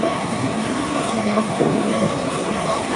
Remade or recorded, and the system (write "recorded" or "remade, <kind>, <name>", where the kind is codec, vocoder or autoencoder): remade, codec, SNAC